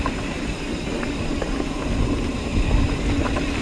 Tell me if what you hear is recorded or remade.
recorded